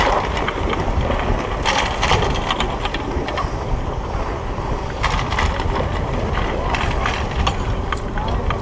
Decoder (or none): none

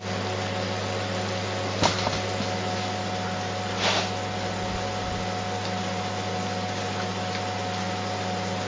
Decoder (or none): none